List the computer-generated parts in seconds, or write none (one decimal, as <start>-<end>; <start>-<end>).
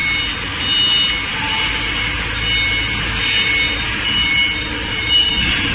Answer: 4.6-5.3